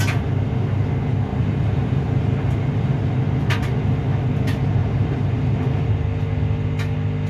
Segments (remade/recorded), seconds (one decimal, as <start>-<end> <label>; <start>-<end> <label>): 0.0-1.3 recorded; 1.3-3.1 remade; 3.1-4.8 recorded; 4.8-5.6 remade; 5.6-7.3 recorded